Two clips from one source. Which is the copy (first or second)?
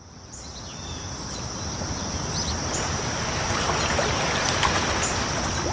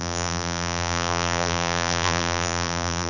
second